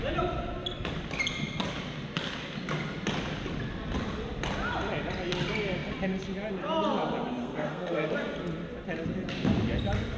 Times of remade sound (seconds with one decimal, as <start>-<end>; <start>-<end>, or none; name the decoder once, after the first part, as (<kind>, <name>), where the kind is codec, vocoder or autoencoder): 7.4-8.1 (codec, SNAC)